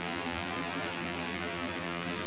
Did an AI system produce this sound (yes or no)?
yes